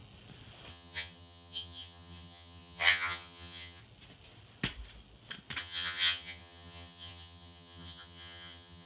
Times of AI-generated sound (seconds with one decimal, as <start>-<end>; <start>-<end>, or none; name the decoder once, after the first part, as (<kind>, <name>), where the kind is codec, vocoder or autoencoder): 0.7-3.8 (vocoder, HiFi-GAN); 5.6-8.9